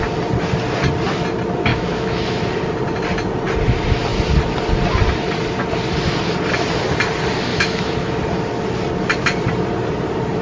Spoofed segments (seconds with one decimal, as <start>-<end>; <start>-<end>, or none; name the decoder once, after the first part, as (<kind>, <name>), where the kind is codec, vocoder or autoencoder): 1.7-2.4 (autoencoder, DAC-VAE); 7.5-8.2

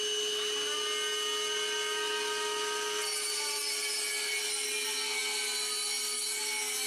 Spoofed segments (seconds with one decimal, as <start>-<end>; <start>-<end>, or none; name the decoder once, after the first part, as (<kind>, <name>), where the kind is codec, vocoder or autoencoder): none